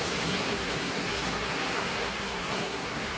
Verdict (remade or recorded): remade